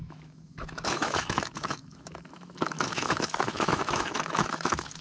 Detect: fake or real fake